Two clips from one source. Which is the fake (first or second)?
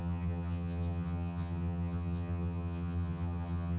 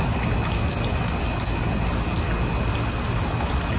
first